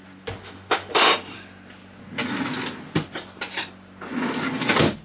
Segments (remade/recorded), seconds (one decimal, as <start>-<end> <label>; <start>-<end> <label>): 0.0-0.4 recorded; 0.4-1.0 remade; 1.0-5.0 recorded